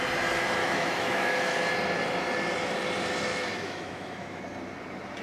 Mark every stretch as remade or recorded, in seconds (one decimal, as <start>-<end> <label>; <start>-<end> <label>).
0.0-0.6 recorded; 0.6-1.7 remade; 1.7-3.3 recorded; 3.3-4.4 remade; 4.4-5.2 recorded